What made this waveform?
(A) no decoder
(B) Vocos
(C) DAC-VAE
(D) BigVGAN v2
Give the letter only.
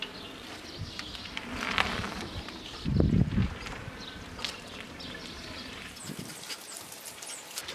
D